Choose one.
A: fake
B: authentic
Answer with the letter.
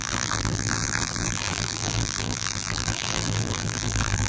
A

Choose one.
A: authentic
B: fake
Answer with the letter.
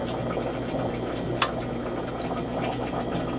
A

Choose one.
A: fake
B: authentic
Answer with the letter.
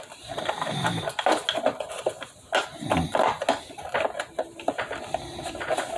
B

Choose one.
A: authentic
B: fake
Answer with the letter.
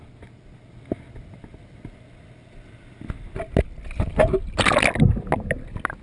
A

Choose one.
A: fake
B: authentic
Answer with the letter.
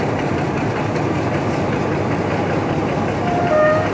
A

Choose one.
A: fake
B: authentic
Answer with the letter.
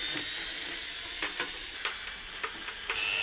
B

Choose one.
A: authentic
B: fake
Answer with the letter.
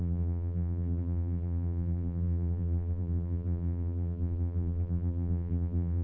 B